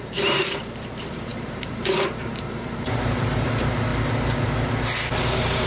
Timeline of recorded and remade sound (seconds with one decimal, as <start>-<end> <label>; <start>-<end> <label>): 0.0-3.9 remade; 3.9-5.2 recorded; 5.2-5.7 remade